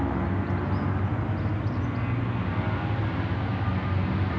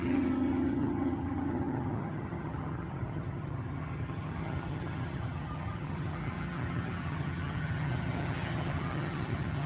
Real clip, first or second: first